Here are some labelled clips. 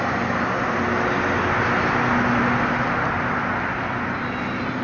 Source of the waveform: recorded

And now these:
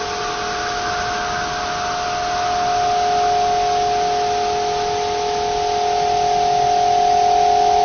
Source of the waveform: recorded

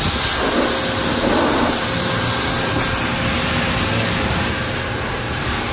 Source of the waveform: recorded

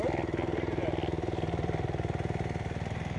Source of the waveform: recorded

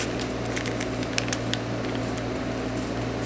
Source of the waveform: recorded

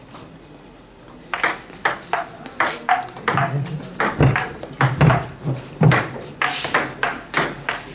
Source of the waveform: recorded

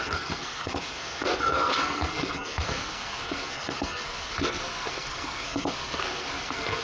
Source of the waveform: remade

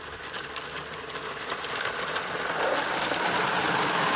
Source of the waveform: recorded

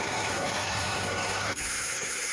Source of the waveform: remade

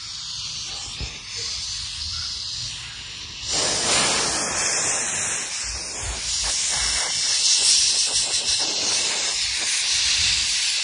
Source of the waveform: recorded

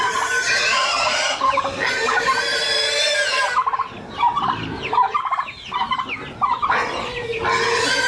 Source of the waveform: recorded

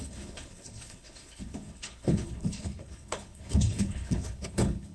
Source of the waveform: remade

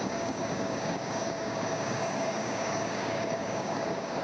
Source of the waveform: remade